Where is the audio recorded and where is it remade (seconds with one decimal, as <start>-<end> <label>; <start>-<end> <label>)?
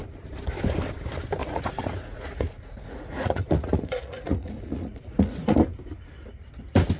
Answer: 0.0-1.4 recorded; 1.4-5.6 remade; 5.6-7.0 recorded